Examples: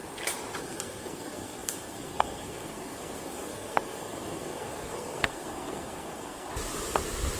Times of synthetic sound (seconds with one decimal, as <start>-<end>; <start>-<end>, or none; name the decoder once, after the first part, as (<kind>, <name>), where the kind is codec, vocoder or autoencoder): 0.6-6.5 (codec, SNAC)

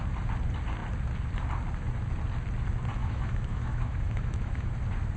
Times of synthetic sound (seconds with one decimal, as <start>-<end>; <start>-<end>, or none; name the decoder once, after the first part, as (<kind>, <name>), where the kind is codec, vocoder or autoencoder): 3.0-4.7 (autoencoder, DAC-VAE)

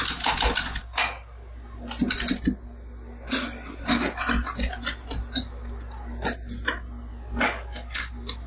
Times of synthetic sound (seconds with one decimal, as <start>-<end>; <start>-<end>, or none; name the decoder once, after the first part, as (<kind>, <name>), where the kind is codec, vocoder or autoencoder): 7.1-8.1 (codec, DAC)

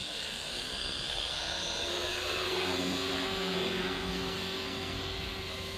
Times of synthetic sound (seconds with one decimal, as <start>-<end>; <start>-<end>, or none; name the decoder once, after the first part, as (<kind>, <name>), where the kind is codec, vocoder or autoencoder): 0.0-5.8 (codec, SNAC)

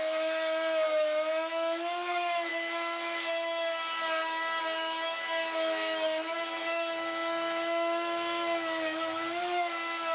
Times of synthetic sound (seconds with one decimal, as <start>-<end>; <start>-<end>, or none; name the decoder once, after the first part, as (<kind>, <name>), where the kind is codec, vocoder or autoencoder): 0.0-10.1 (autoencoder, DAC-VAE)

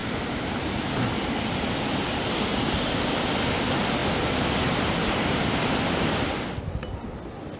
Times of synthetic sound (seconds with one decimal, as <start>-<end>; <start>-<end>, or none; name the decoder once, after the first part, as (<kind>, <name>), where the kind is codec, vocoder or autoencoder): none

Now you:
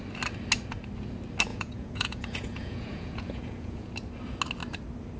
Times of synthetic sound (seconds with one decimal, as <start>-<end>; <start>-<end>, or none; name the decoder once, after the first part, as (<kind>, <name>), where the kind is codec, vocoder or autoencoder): 1.5-3.9 (vocoder, Vocos)

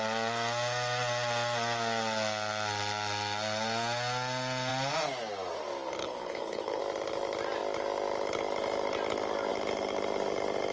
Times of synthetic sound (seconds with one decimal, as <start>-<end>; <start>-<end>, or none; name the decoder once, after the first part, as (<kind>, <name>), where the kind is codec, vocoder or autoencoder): 6.0-6.8 (codec, HILCodec)